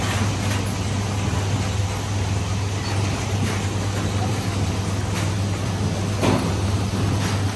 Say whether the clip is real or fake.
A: real